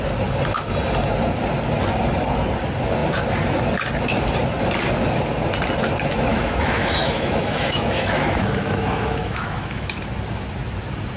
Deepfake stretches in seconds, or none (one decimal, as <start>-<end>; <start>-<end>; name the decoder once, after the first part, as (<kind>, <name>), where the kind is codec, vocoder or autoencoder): 6.3-10.0 (autoencoder, DAC-VAE)